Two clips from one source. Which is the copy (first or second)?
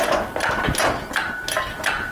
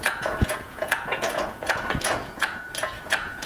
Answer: second